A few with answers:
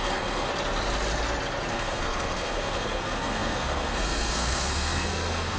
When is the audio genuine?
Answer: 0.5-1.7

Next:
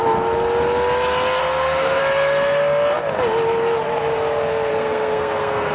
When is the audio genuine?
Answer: 0.0-1.4; 2.0-4.7

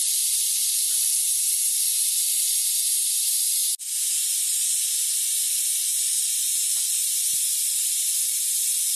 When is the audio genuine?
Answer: 0.0-9.0

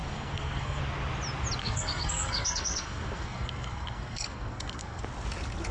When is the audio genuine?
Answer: 0.8-1.6; 5.0-5.7

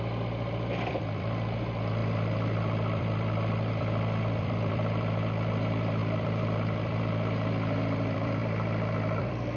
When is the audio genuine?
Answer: none